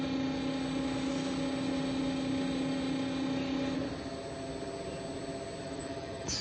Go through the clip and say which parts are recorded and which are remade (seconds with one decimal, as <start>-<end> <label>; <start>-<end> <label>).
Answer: 0.0-5.6 recorded; 5.6-6.4 remade